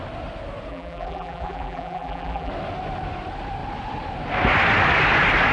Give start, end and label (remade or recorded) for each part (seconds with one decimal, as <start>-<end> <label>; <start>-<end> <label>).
0.0-0.7 recorded; 0.7-2.5 remade; 2.5-5.5 recorded